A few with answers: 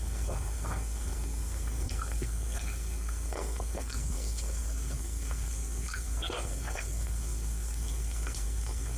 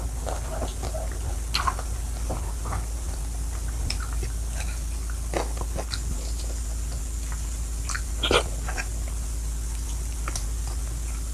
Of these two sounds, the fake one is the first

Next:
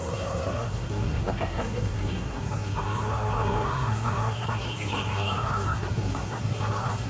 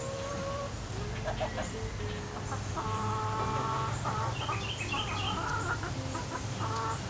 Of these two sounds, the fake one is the first